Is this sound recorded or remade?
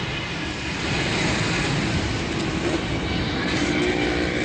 recorded